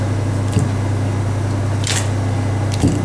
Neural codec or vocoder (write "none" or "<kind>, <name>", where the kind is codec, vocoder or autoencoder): none